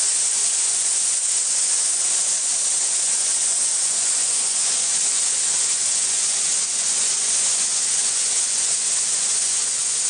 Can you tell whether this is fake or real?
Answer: fake